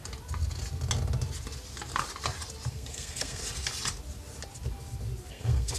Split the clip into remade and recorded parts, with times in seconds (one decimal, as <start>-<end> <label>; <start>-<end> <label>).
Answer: 0.0-2.7 recorded; 2.7-3.4 remade; 3.4-5.3 recorded; 5.3-5.8 remade